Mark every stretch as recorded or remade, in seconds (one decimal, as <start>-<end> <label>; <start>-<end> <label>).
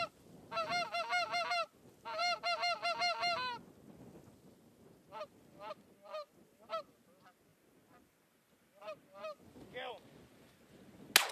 0.0-11.3 recorded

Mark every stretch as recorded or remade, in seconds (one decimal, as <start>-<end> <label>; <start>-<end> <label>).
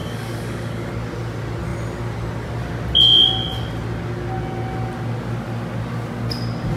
0.0-0.9 remade; 0.9-6.8 recorded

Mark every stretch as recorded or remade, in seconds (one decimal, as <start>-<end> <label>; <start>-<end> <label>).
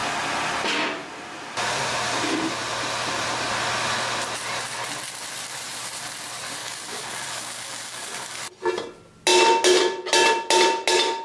0.0-6.6 recorded; 6.6-8.4 remade; 8.4-11.2 recorded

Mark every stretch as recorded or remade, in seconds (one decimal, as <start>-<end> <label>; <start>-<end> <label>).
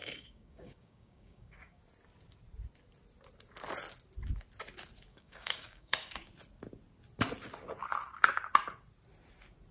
0.0-1.8 remade; 1.8-5.1 recorded; 5.1-6.3 remade; 6.3-9.7 recorded